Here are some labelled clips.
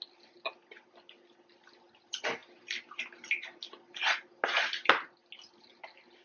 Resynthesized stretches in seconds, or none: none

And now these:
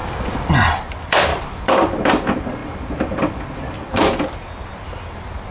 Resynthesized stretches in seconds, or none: 1.3-2.1 (vocoder, BigVGAN v2); 2.6-4.0

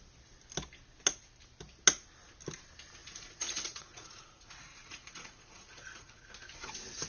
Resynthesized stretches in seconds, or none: 3.0-6.2 (vocoder, Vocos)

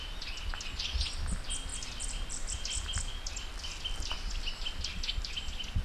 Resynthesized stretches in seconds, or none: none